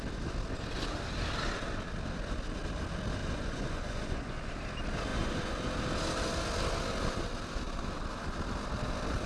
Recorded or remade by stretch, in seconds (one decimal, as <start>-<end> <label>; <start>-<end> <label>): 0.0-3.2 recorded; 3.2-4.5 remade; 4.5-5.1 recorded; 5.1-5.6 remade; 5.6-9.3 recorded